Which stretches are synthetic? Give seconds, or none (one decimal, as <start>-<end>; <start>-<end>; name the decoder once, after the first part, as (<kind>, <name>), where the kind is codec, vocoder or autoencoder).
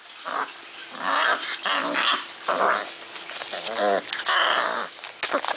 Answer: none